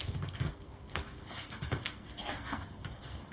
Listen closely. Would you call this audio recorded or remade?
remade